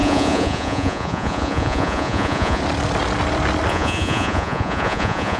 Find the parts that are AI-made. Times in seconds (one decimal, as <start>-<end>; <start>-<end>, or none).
0.0-2.6; 3.7-5.4